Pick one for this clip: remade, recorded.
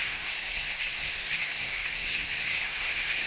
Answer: remade